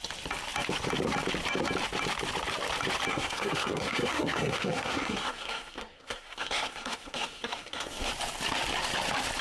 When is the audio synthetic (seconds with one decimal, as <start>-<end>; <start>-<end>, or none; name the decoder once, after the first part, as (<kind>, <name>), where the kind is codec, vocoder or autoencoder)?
3.1-8.1 (codec, SNAC)